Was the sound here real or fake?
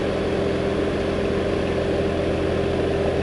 real